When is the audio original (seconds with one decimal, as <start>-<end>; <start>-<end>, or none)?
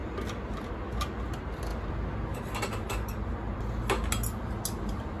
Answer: 0.0-5.2